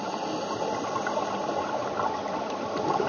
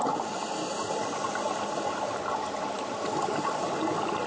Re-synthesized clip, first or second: first